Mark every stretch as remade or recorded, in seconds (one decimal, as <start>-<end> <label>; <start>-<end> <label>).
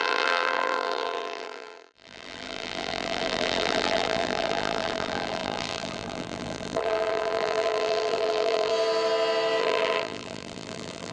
0.0-8.7 remade; 8.7-9.6 recorded; 9.6-11.1 remade